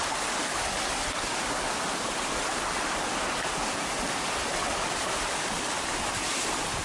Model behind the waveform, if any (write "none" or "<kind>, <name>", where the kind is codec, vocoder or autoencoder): none